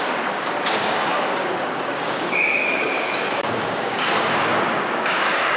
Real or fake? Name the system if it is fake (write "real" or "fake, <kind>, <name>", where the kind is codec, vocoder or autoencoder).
fake, codec, DAC